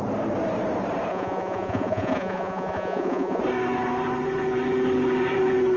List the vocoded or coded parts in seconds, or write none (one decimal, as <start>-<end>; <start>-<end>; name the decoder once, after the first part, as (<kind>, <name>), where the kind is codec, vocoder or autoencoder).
1.1-3.4 (vocoder, Vocos)